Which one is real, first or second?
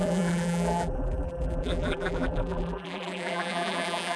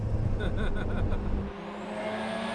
second